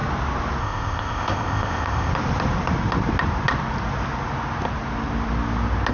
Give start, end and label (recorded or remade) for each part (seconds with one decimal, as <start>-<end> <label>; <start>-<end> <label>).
0.0-0.6 recorded; 0.6-2.1 remade; 2.1-5.9 recorded